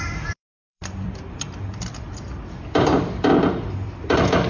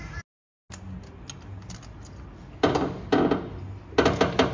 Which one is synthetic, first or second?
first